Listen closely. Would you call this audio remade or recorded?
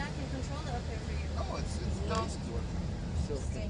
recorded